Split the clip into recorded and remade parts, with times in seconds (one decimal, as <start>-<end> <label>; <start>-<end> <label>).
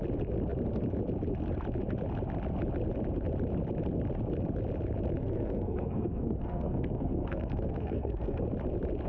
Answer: 0.0-5.2 recorded; 5.2-8.4 remade; 8.4-9.1 recorded